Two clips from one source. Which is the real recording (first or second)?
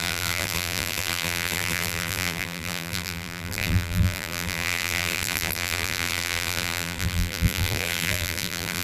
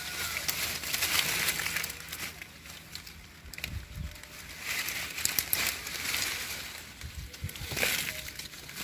second